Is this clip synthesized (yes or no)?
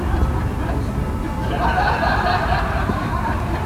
yes